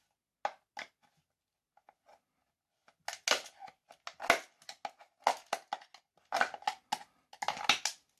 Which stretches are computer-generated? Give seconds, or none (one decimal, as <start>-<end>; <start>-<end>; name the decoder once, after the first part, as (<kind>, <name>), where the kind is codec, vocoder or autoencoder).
none

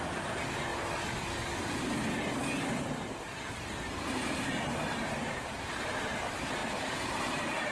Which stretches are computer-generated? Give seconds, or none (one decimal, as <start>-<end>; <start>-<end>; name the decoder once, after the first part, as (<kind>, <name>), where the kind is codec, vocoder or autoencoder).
0.0-0.7 (vocoder, BigVGAN v2); 5.0-7.7